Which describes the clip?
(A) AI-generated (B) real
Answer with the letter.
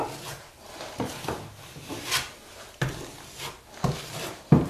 B